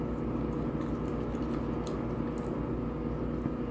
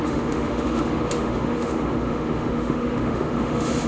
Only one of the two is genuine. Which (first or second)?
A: first